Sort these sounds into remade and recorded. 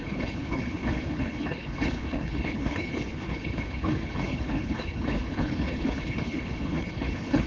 remade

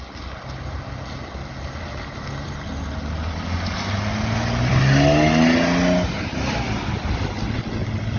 recorded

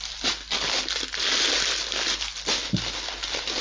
recorded